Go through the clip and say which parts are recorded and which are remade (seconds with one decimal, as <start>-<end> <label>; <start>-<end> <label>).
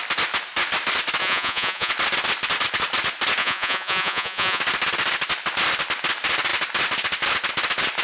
0.0-1.2 recorded; 1.2-1.9 remade; 1.9-3.4 recorded; 3.4-4.6 remade; 4.6-8.0 recorded